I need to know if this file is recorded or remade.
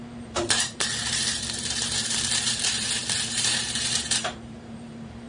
remade